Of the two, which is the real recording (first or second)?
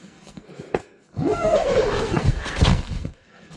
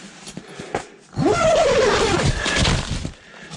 second